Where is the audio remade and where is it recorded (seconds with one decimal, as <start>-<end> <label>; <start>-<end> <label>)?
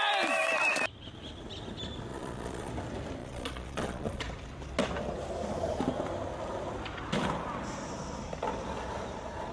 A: 0.0-2.1 recorded; 2.1-2.7 remade; 2.7-3.2 recorded; 3.2-4.2 remade; 4.2-9.5 recorded